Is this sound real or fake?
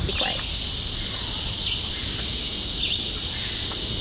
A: real